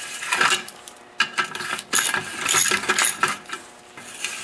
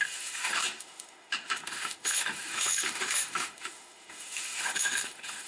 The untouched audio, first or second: first